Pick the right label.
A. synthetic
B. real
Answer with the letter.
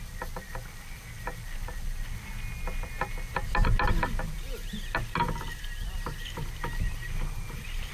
B